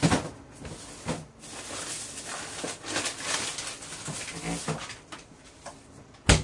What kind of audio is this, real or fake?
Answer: real